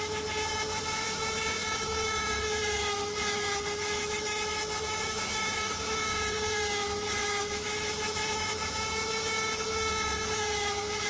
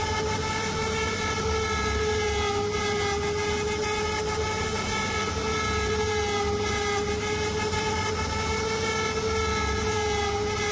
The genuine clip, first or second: second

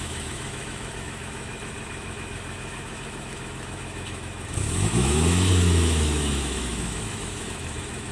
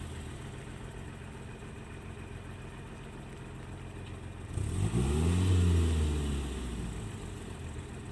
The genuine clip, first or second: second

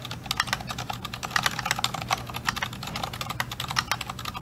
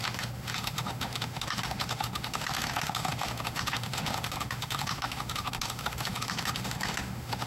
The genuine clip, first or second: first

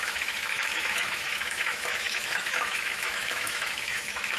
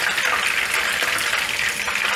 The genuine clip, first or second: second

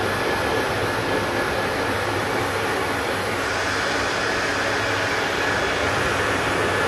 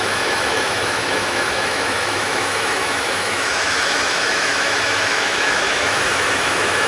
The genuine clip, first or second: first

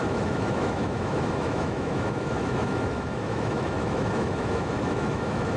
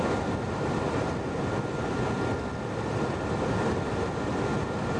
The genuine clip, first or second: second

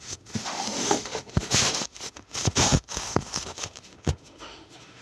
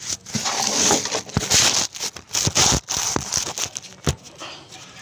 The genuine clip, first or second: second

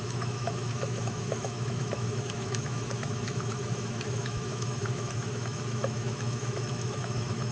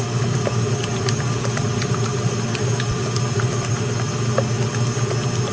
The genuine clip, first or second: second